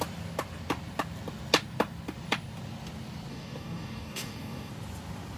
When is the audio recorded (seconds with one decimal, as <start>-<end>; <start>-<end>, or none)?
0.0-3.3; 4.7-5.4